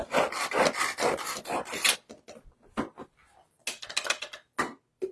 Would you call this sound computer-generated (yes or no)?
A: no